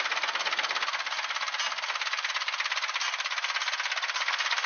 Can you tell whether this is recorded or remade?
recorded